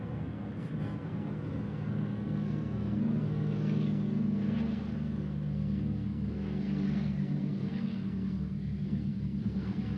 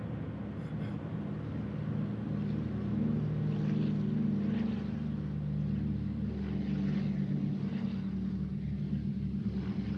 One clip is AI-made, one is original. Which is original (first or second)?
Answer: second